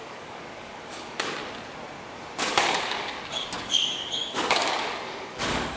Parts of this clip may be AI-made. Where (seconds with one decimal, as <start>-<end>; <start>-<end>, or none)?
0.0-1.4; 2.4-5.8